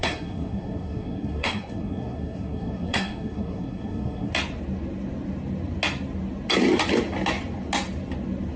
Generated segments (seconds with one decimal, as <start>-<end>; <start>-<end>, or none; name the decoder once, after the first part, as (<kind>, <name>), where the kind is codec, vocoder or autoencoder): 0.0-4.3 (codec, SNAC)